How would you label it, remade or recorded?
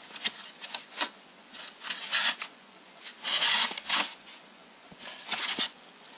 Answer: remade